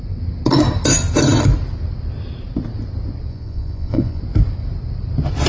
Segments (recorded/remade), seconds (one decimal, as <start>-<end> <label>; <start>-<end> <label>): 0.0-3.3 recorded; 3.3-4.2 remade; 4.2-5.5 recorded